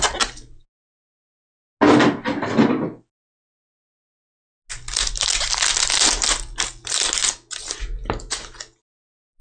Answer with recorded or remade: recorded